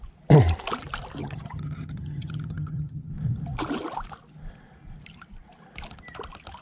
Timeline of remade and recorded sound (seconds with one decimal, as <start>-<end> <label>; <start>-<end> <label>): 0.0-1.2 recorded; 1.2-3.1 remade; 3.1-6.6 recorded